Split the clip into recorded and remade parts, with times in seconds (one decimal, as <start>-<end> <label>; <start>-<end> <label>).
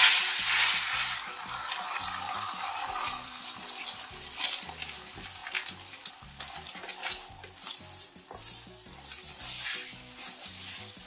0.0-1.9 recorded; 1.9-4.1 remade; 4.1-11.1 recorded